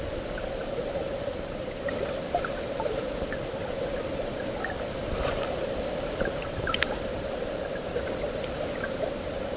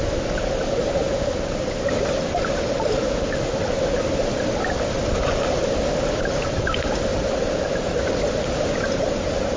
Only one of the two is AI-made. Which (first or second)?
first